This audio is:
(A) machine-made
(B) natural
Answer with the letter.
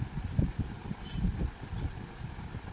B